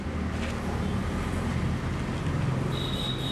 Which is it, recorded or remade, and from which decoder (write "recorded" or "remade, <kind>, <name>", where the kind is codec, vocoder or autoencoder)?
recorded